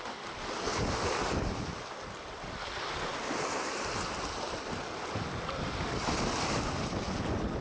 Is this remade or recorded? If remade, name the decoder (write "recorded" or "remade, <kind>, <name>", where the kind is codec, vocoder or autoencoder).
recorded